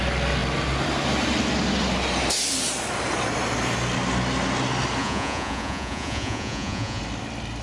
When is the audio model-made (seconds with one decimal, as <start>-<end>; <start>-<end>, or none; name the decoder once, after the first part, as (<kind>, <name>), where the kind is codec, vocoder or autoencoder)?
5.0-7.0 (vocoder, Vocos)

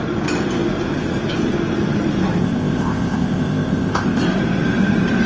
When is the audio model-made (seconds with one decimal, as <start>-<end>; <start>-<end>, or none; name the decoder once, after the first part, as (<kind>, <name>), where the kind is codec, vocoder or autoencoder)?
2.4-4.2 (codec, ZipCodec)